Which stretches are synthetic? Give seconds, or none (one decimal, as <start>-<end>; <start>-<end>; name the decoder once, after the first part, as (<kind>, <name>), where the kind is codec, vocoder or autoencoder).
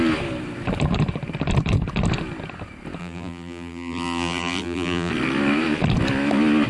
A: 3.0-5.1 (vocoder, BigVGAN v2)